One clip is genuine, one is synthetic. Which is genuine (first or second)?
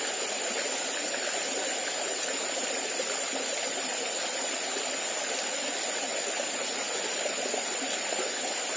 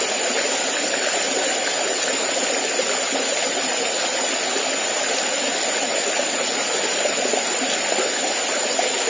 second